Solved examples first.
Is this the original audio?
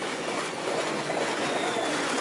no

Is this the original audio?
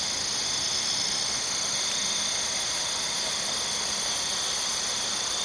yes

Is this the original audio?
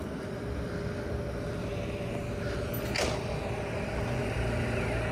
yes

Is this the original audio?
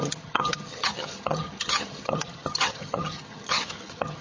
no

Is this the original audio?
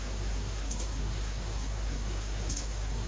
no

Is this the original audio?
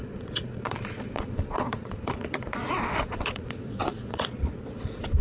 no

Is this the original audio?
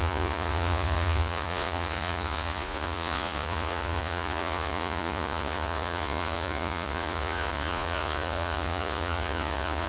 no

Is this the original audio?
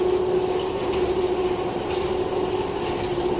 yes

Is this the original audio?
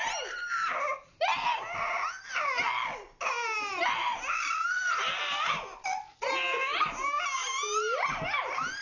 yes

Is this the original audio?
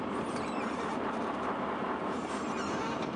yes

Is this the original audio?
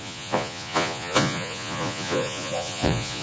no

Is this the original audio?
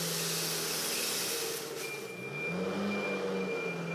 yes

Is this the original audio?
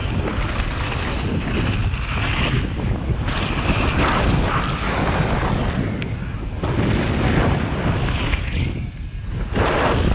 yes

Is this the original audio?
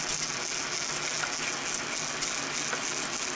yes